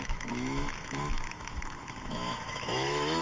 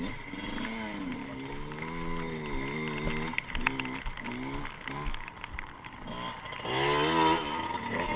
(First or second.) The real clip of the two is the second